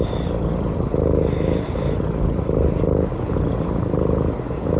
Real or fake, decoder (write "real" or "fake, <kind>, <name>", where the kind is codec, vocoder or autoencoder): real